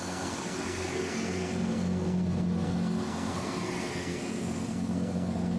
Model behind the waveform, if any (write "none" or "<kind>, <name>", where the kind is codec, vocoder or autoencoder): codec, SNAC